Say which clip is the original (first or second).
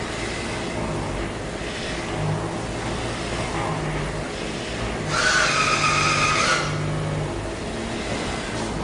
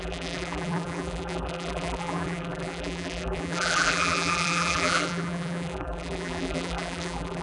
first